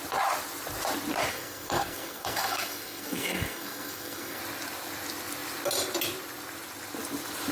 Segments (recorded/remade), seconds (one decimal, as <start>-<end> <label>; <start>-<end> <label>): 0.0-1.3 recorded; 1.3-4.4 remade; 4.4-7.5 recorded